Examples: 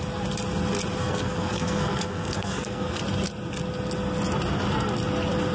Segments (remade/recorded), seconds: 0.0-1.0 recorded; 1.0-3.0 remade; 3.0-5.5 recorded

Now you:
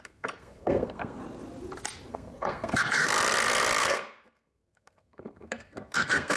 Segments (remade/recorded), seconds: 0.0-1.2 remade; 1.2-2.1 recorded; 2.1-3.1 remade; 3.1-3.8 recorded; 3.8-6.4 remade

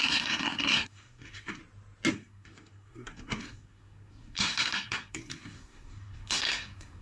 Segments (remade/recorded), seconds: 0.0-1.6 remade; 1.6-2.1 recorded; 2.1-7.0 remade

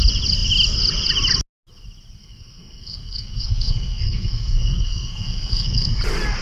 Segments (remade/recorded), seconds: 0.0-2.2 recorded; 2.2-6.0 remade; 6.0-6.4 recorded

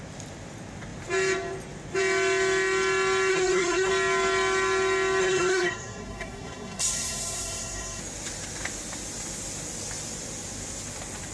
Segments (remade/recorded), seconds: 0.0-3.3 recorded; 3.3-3.9 remade; 3.9-5.2 recorded; 5.2-8.0 remade; 8.0-11.3 recorded

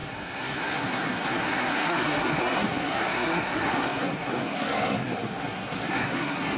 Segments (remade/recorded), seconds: 0.0-6.6 remade

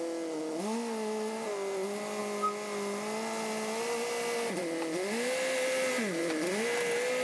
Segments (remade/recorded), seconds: 0.0-7.2 recorded

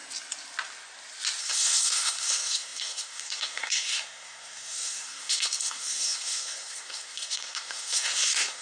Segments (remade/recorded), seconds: 0.0-1.4 recorded; 1.4-8.6 remade